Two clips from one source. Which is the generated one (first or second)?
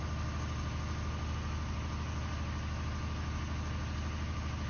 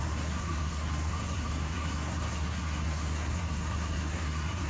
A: second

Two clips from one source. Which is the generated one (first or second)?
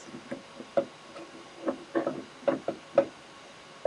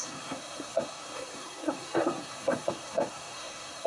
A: second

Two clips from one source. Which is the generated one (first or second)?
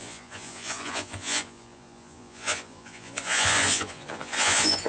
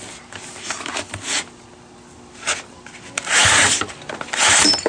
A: first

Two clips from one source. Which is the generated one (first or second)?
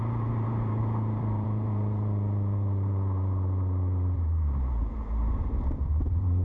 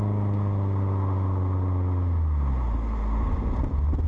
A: first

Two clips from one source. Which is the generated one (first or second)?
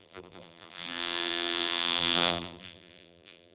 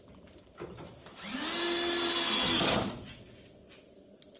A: first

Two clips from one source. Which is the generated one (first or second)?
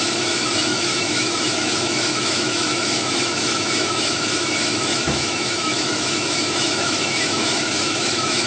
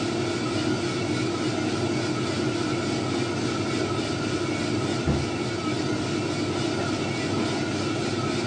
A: first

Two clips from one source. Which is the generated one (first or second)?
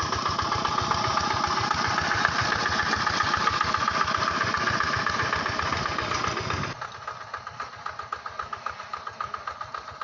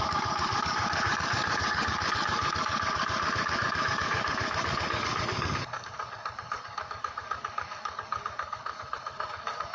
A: second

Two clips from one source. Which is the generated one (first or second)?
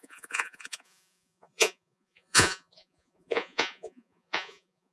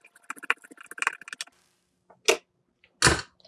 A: first